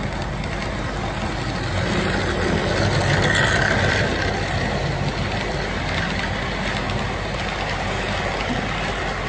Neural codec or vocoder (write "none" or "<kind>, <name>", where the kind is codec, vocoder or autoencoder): none